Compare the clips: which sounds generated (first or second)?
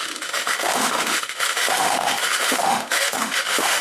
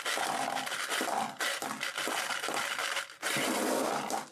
first